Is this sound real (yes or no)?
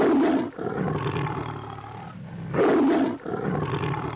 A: yes